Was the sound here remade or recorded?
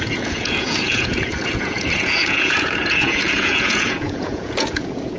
remade